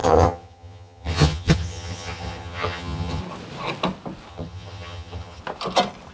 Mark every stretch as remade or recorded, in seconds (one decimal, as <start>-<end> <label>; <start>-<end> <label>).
0.0-3.2 remade; 3.2-4.3 recorded; 4.3-5.4 remade; 5.4-6.1 recorded